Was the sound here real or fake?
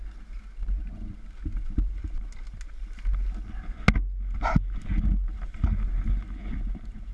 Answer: real